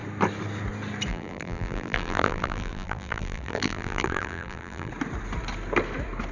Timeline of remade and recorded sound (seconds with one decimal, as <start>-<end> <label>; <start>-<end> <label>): 0.0-1.1 recorded; 1.1-4.9 remade; 4.9-6.3 recorded